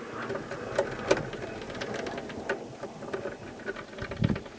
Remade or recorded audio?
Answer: recorded